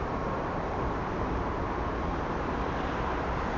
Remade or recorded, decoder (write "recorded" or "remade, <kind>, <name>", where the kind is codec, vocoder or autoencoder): remade, vocoder, BigVGAN v2